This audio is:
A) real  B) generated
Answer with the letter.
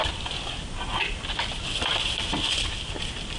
A